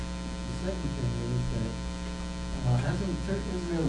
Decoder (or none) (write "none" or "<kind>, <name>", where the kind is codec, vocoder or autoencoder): none